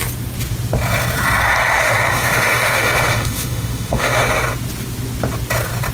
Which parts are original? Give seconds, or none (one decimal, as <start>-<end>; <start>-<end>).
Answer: 0.0-1.7; 4.2-5.9